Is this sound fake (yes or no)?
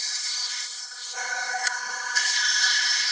yes